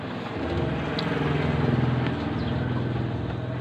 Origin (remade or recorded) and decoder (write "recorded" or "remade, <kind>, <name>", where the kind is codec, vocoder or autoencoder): recorded